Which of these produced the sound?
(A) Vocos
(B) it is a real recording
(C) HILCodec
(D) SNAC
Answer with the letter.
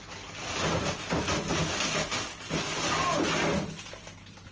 B